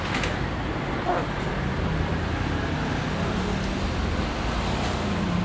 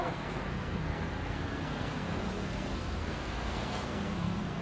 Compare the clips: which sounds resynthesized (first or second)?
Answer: second